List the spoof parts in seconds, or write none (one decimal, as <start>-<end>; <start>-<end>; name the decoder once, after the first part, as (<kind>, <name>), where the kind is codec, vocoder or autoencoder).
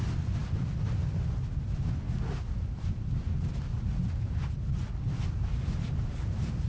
none